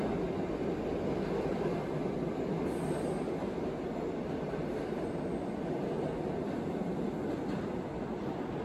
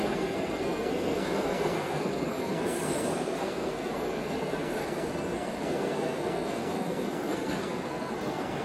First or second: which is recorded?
first